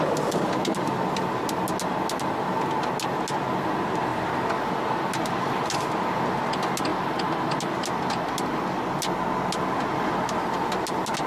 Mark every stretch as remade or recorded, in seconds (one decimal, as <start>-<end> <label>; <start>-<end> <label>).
0.0-11.3 recorded